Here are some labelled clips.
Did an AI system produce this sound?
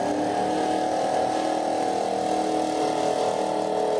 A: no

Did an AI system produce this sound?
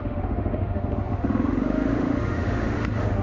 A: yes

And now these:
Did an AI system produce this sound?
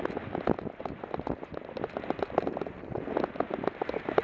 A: no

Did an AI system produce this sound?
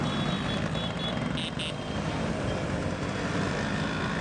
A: no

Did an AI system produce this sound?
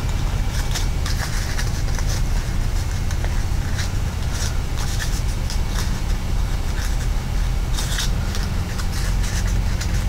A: no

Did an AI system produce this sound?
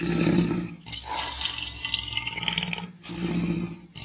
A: no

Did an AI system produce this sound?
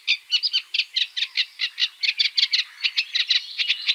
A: no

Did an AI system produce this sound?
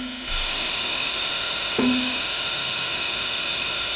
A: yes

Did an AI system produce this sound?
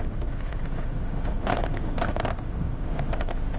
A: yes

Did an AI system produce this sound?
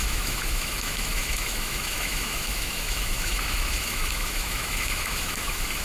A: yes